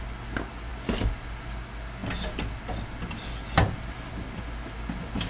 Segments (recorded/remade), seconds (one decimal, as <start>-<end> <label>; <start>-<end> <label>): 0.0-5.3 recorded